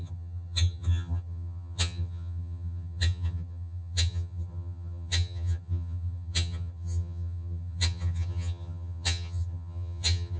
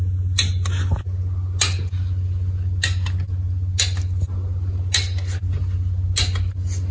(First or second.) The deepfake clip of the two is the first